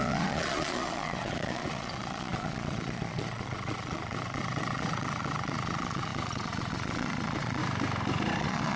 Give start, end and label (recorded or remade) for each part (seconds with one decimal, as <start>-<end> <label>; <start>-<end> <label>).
0.0-7.6 remade; 7.6-8.4 recorded; 8.4-8.8 remade